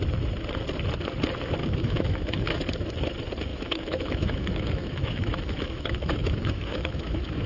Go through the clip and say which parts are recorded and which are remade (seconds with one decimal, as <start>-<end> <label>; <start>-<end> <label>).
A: 0.0-1.6 recorded; 1.6-2.6 remade; 2.6-3.5 recorded; 3.5-7.5 remade